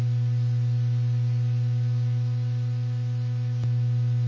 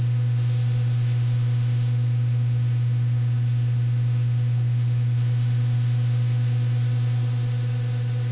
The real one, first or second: first